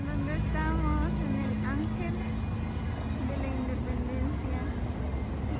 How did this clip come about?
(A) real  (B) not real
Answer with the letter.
A